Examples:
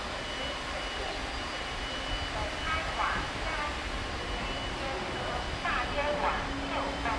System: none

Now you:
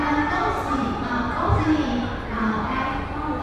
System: none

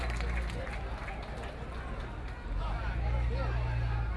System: none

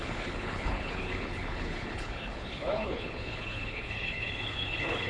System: codec, HILCodec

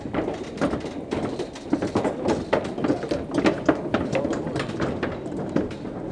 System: none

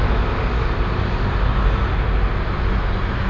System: none